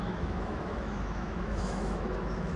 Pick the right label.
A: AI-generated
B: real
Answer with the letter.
A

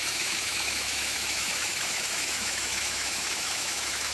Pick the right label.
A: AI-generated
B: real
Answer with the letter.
A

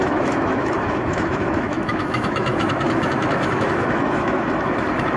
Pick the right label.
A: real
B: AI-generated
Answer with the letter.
B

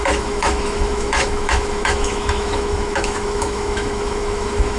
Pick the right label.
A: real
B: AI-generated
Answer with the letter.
B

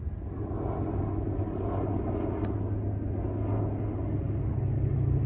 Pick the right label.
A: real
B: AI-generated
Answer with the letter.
A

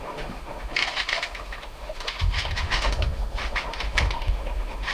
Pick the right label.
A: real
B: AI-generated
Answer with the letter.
B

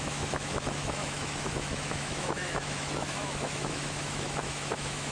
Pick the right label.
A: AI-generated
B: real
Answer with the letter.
A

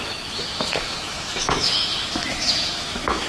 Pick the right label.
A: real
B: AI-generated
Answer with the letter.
B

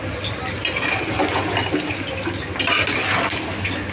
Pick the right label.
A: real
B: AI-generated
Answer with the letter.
A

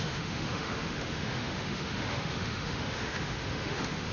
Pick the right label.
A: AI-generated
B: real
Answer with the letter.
A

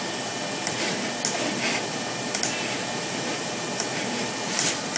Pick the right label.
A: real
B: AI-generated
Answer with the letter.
A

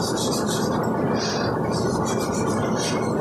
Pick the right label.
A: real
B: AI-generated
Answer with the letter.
A